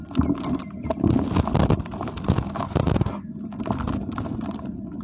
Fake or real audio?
real